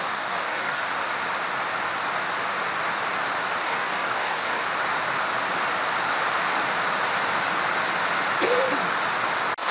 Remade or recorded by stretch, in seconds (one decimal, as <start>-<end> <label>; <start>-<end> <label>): 0.0-0.8 remade; 0.8-3.6 recorded; 3.6-4.6 remade; 4.6-9.7 recorded